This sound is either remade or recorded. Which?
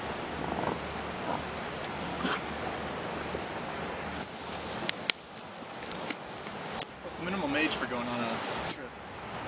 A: recorded